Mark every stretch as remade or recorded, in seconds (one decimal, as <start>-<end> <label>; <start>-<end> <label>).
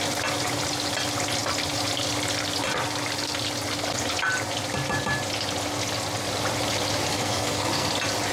0.0-7.1 recorded; 7.1-7.9 remade; 7.9-8.3 recorded